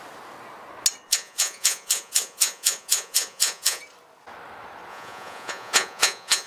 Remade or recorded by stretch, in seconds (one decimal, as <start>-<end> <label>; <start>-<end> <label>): 0.0-1.1 recorded; 1.1-3.8 remade; 3.8-4.9 recorded; 4.9-6.5 remade